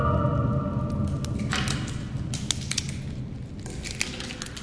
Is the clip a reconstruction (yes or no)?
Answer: no